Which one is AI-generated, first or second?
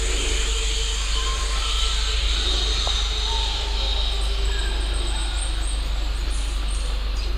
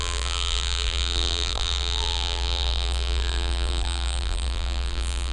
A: second